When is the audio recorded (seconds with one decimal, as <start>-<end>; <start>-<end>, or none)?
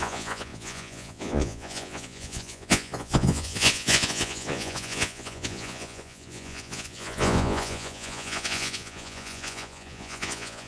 none